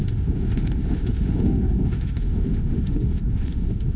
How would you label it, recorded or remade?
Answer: remade